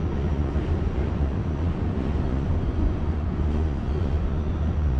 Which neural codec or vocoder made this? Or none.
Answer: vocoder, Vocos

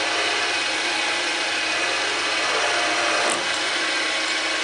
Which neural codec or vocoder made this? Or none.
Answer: none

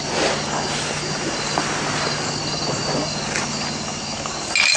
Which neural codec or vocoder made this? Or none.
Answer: none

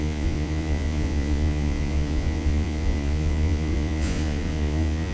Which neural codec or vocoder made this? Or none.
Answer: vocoder, Vocos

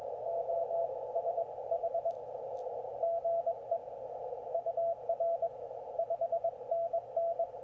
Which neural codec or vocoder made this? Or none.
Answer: none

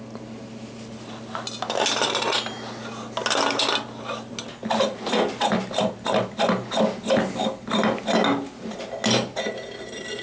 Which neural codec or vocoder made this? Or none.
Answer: none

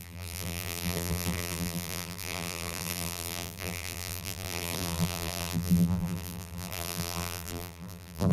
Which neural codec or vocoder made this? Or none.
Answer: vocoder, BigVGAN v2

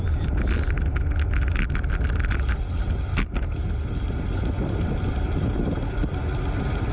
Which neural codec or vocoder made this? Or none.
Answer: none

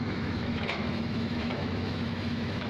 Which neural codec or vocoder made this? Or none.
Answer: autoencoder, DAC-VAE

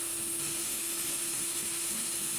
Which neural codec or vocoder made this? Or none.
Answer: autoencoder, DAC-VAE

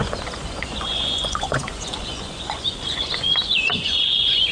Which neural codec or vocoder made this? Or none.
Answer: vocoder, Vocos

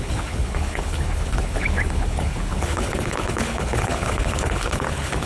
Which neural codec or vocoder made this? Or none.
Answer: codec, HILCodec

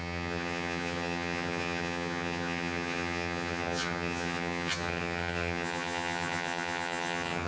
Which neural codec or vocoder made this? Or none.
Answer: vocoder, HiFi-GAN